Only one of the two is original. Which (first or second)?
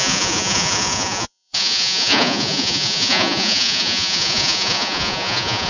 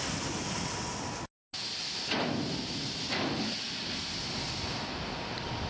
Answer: second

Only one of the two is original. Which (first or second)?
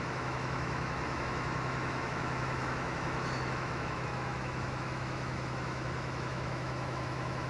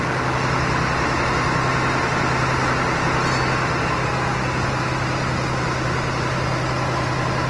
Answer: second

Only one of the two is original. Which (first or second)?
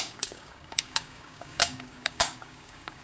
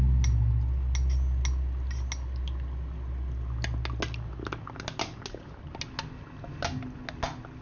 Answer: second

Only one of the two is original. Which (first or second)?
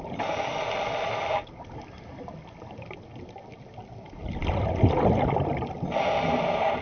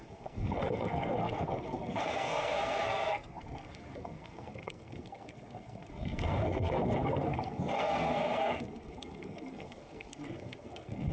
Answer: first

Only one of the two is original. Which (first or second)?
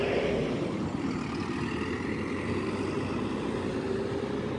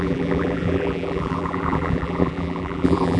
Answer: first